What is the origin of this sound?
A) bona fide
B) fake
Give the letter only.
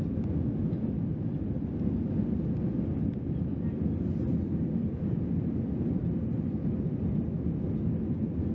A